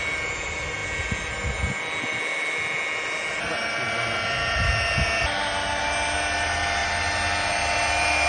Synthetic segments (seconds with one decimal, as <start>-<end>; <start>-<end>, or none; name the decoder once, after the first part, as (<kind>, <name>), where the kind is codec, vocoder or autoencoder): none